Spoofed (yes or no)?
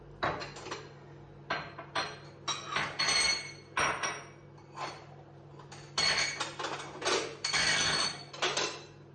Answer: no